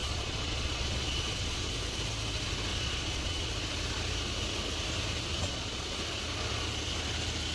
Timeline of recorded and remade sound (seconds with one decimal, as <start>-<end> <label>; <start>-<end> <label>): 0.0-1.7 remade; 1.7-2.7 recorded; 2.7-3.5 remade; 3.5-5.3 recorded; 5.3-6.0 remade; 6.0-7.5 recorded